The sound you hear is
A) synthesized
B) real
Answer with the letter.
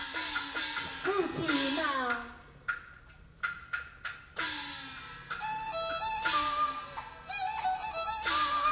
B